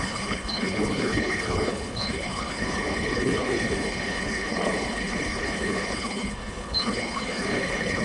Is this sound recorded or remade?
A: remade